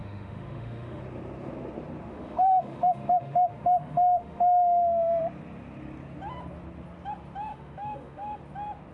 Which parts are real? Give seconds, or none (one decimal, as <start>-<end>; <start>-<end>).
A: 1.0-2.1; 5.2-7.5; 8.4-8.9